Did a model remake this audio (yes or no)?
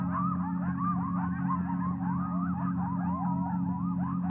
no